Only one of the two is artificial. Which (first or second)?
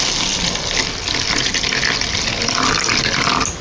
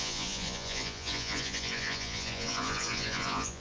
second